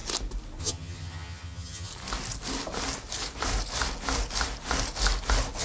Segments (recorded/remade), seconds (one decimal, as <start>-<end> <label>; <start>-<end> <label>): 0.0-0.6 recorded; 0.6-1.9 remade; 1.9-5.6 recorded